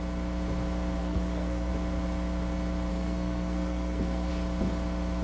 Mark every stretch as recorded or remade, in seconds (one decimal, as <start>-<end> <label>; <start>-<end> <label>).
0.0-1.0 recorded; 1.0-1.7 remade; 1.7-2.9 recorded; 2.9-4.3 remade; 4.3-5.2 recorded